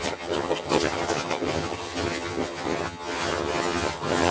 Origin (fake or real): fake